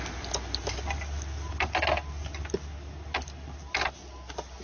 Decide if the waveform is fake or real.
real